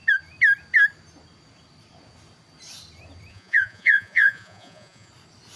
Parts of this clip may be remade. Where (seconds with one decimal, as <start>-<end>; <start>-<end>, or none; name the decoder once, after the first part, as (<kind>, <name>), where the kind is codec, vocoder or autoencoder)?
3.3-5.1 (vocoder, Vocos)